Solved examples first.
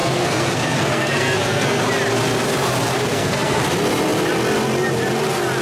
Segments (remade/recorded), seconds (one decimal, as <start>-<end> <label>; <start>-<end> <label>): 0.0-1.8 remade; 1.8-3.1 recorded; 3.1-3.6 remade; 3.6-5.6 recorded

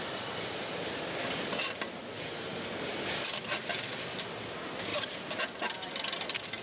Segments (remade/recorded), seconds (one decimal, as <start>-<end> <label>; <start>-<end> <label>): 0.0-6.6 recorded

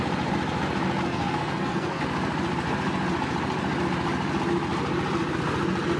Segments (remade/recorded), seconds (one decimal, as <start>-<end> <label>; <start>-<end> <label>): 0.0-1.1 recorded; 1.1-2.0 remade; 2.0-6.0 recorded

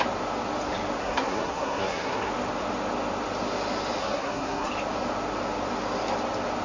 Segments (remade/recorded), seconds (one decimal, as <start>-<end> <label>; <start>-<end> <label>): 0.0-1.0 recorded; 1.0-2.3 remade; 2.3-4.0 recorded; 4.0-4.7 remade; 4.7-6.6 recorded

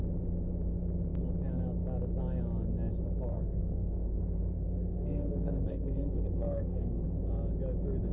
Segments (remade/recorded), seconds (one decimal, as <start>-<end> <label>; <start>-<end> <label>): 0.0-3.3 recorded; 3.3-7.2 remade; 7.2-8.1 recorded